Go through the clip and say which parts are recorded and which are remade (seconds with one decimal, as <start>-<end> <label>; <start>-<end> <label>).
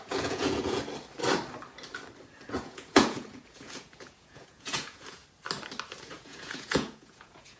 0.0-0.8 remade; 0.8-2.5 recorded; 2.5-5.2 remade; 5.2-6.0 recorded; 6.0-7.6 remade